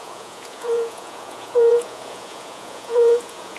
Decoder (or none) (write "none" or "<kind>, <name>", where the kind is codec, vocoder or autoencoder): vocoder, Vocos